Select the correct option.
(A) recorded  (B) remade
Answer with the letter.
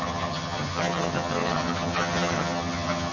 B